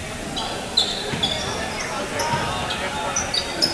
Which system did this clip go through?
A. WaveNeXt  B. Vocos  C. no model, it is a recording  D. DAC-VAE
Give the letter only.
C